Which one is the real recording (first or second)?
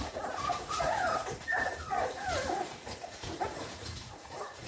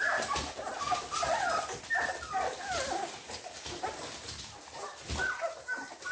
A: second